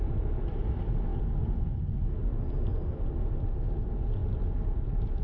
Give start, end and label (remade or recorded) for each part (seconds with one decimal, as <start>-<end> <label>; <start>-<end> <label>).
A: 0.0-5.2 recorded